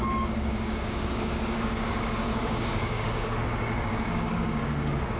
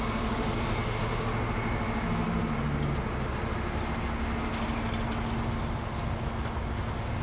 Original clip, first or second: second